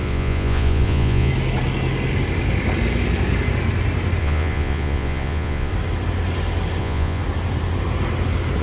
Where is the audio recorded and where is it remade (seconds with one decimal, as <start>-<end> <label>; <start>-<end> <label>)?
0.0-1.3 remade; 1.3-4.2 recorded; 4.2-5.7 remade; 5.7-6.8 recorded; 6.8-7.2 remade; 7.2-8.6 recorded